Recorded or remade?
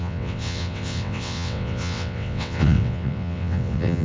remade